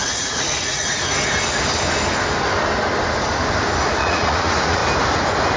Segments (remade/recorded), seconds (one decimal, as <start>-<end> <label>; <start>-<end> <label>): 0.0-0.8 remade; 0.8-4.0 recorded; 4.0-4.8 remade; 4.8-5.6 recorded